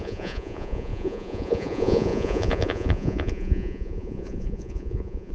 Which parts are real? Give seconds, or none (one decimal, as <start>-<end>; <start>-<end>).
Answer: none

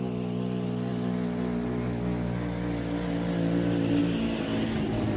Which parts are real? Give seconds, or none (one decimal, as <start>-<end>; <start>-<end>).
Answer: 0.0-5.2

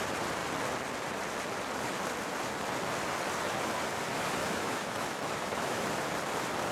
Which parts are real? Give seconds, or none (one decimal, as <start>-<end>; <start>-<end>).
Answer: 0.0-4.4; 6.0-6.7

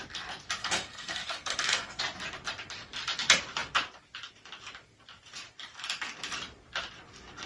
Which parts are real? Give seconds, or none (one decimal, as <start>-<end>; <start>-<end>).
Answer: 0.0-0.6; 2.0-7.5